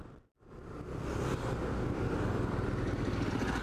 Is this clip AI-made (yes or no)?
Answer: no